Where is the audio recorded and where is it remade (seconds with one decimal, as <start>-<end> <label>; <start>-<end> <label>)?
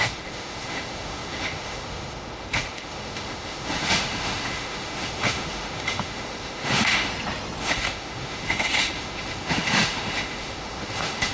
0.0-7.1 remade; 7.1-7.6 recorded; 7.6-11.3 remade